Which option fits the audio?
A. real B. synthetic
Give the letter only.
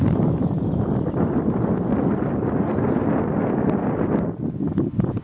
A